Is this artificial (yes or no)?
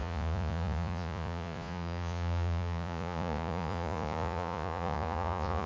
yes